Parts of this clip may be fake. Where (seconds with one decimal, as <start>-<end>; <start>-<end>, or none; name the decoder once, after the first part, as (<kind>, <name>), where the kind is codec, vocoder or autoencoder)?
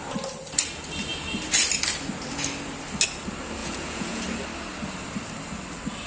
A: 3.6-4.2 (vocoder, Vocos)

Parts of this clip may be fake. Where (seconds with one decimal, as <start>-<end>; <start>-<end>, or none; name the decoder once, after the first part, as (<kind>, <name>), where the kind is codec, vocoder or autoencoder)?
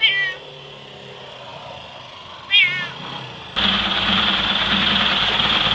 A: none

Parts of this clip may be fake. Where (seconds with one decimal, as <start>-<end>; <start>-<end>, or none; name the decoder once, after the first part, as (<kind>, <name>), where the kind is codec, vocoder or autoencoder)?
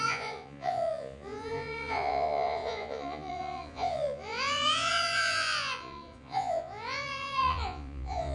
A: 0.0-8.3 (vocoder, Vocos)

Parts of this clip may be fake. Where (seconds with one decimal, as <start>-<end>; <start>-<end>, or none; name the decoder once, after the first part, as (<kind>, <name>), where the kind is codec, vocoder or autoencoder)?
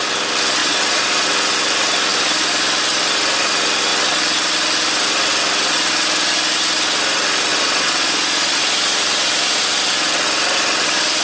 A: 0.6-1.3 (vocoder, Vocos); 7.5-8.6